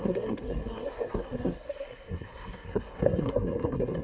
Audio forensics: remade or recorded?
remade